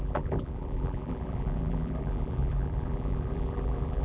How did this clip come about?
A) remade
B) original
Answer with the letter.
A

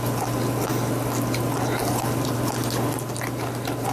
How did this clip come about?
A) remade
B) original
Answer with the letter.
B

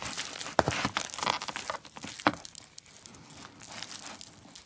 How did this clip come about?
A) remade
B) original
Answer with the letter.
B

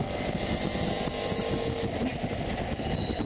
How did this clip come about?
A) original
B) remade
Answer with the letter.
A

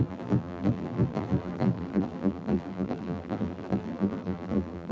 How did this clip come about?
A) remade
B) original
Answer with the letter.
A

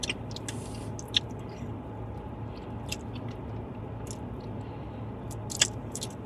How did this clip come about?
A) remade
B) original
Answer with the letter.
B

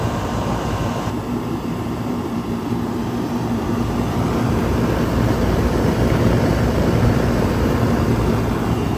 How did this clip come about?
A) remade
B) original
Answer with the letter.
A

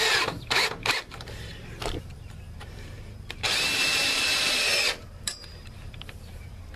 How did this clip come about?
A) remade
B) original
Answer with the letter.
A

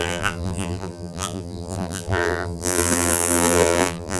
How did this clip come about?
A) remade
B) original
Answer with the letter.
A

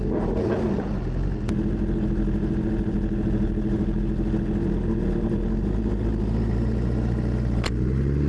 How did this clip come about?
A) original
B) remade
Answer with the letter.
A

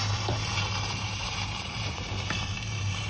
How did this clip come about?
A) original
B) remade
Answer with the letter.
B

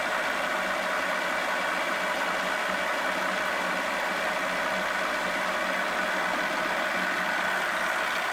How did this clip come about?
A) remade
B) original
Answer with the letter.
B